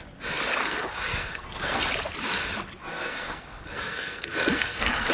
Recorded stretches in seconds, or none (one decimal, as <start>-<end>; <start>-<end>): 0.0-0.6; 1.8-2.8

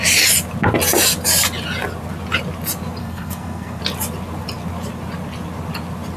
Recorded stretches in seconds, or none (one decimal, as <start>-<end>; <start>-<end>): 0.0-3.0; 3.8-6.2

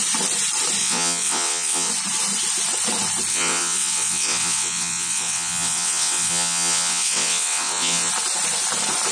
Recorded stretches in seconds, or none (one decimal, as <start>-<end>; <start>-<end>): 0.0-0.8; 1.9-3.3; 8.1-9.1

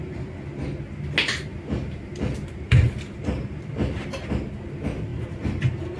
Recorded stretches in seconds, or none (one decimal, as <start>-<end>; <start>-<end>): 0.0-1.5; 4.3-5.1

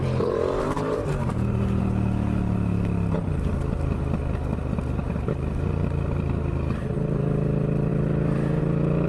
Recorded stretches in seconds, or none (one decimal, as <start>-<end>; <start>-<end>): 1.8-9.1

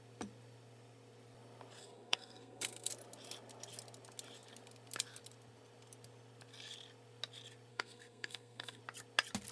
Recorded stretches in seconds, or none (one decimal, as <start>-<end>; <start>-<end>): 0.0-1.8; 2.9-7.7; 8.8-9.5

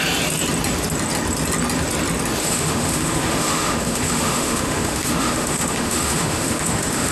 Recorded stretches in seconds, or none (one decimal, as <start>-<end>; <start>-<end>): 0.0-2.4